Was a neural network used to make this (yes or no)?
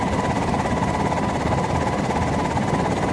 no